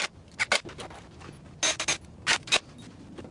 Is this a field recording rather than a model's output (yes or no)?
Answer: yes